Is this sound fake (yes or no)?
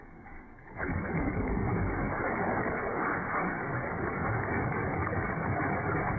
yes